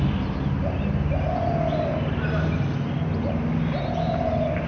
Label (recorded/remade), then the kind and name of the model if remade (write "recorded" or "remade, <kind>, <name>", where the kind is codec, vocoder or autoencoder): recorded